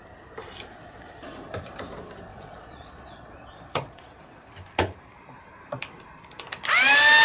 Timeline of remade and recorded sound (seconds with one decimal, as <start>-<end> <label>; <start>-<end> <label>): 0.0-2.3 recorded; 2.3-4.5 remade; 4.5-7.2 recorded